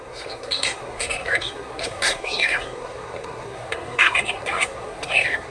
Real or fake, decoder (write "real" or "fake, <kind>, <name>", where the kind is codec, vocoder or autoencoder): fake, codec, SNAC